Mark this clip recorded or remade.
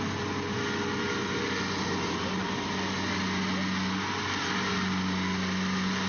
recorded